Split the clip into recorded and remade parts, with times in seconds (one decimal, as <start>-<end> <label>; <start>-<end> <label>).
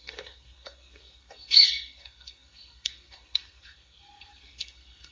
0.0-5.1 remade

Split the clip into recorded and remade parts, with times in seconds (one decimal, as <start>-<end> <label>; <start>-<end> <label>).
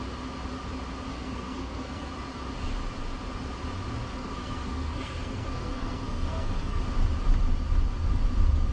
0.0-1.1 recorded; 1.1-2.1 remade; 2.1-4.2 recorded; 4.2-6.8 remade; 6.8-8.7 recorded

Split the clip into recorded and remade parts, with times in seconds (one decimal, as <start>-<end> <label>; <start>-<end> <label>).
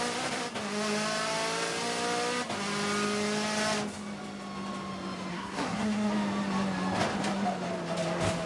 0.0-5.3 recorded; 5.3-6.1 remade; 6.1-8.5 recorded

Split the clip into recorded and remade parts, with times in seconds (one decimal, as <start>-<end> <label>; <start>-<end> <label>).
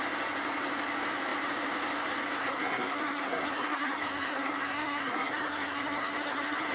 0.0-2.4 recorded; 2.4-6.7 remade